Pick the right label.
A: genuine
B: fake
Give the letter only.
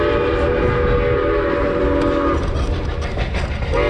A